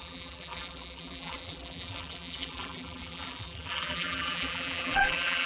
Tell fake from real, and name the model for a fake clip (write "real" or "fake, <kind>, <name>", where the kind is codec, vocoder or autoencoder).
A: fake, vocoder, BigVGAN v2